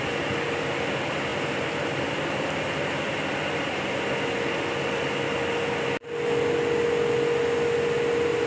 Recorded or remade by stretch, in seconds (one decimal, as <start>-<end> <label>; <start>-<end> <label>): 0.0-8.5 recorded